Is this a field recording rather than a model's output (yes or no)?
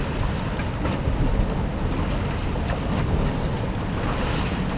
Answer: yes